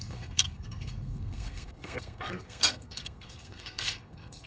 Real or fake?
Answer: fake